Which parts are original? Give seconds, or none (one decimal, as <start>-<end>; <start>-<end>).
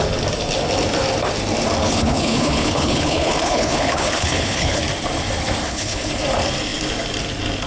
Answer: 0.0-1.8; 4.8-5.6; 6.1-7.7